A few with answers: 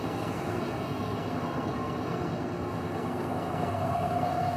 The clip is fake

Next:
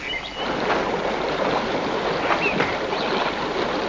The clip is real